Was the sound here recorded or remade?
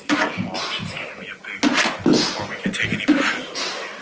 recorded